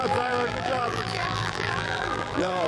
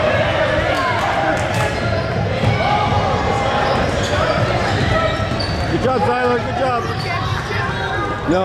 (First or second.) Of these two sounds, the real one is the second